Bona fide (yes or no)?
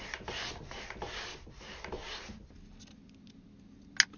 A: yes